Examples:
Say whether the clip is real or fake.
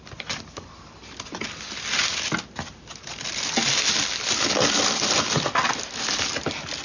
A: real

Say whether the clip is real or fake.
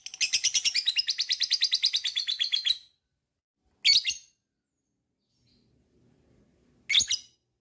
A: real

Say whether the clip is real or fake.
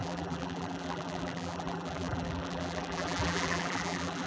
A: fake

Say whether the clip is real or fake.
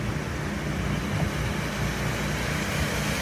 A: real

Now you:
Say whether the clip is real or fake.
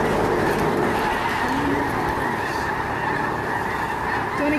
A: real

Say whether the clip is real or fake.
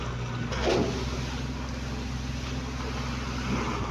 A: real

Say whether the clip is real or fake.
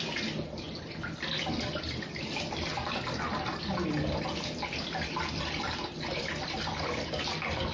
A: real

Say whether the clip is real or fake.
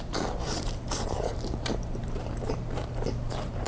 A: fake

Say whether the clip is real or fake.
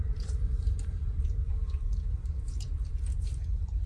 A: fake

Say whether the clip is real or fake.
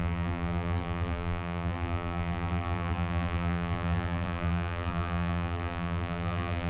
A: fake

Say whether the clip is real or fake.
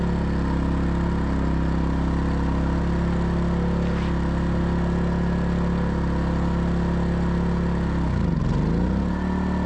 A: real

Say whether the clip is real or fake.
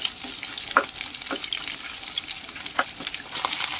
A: fake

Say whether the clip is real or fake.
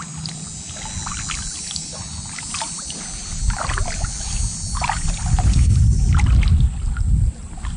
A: real